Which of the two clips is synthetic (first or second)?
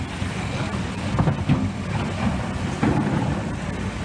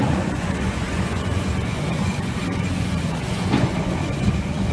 second